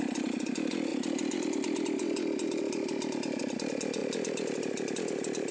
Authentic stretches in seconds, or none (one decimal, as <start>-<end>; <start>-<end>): 0.0-5.5